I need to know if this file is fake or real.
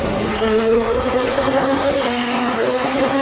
fake